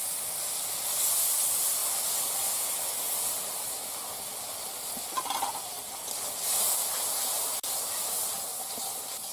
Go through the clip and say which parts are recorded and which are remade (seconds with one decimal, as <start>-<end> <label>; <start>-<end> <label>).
0.0-1.4 recorded; 1.4-1.8 remade; 1.8-7.0 recorded; 7.0-9.3 remade